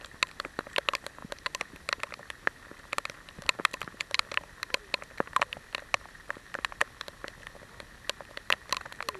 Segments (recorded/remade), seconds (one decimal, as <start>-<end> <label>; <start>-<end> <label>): 0.0-9.2 recorded